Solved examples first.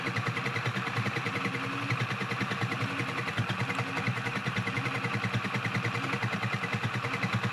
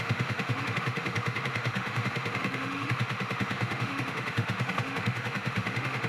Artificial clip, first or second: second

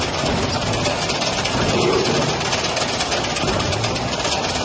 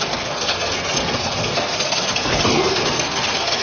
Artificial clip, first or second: second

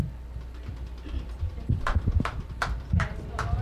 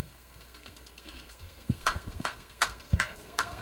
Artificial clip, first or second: second